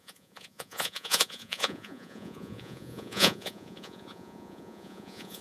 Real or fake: fake